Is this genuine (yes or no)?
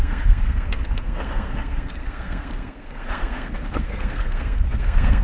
no